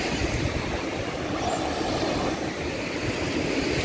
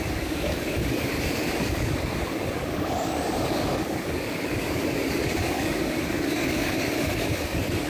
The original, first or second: first